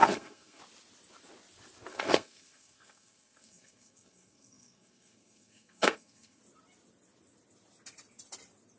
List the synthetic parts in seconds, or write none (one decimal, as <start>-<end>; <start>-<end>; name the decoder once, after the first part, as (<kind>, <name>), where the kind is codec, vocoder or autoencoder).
0.0-0.6 (codec, SNAC); 1.9-6.4